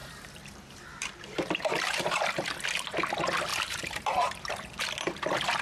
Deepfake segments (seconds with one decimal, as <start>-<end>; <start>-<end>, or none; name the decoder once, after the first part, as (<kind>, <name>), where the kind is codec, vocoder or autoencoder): 0.0-2.3 (vocoder, BigVGAN v2); 3.5-4.8